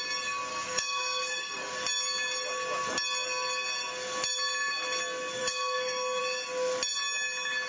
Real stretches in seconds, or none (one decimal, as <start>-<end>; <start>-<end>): 0.0-0.5; 1.7-5.4; 6.2-7.7

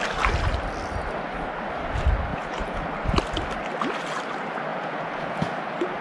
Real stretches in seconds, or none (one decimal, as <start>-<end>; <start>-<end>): 0.0-2.3; 2.8-4.7; 5.5-6.0

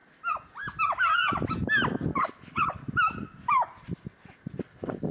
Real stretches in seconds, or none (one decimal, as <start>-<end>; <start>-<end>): 0.0-2.2; 2.8-4.6